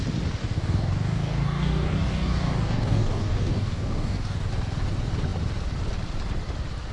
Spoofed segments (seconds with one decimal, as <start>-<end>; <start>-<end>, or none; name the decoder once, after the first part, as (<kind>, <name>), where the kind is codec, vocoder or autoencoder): 0.4-4.5 (codec, DAC)